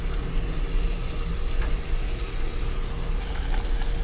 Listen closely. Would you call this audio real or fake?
real